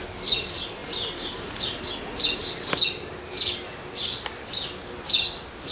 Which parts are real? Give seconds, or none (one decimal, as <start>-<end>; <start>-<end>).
0.0-5.7

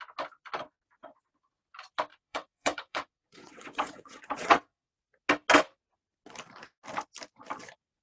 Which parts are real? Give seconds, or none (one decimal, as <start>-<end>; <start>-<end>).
0.0-2.1; 4.9-8.0

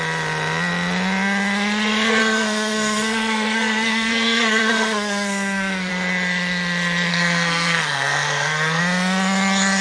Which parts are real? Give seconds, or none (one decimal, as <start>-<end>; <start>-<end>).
0.0-2.2; 5.9-7.1; 8.8-9.8

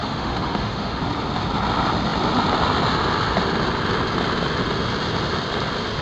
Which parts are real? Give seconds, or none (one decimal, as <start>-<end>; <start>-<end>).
1.0-6.0

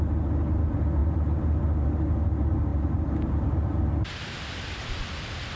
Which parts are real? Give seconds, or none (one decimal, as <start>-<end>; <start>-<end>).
0.0-5.6